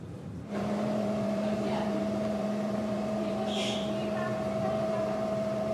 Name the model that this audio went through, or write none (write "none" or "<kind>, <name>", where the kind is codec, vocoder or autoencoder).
vocoder, BigVGAN v2